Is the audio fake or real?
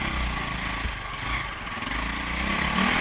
real